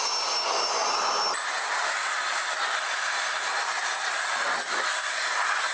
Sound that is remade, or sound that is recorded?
recorded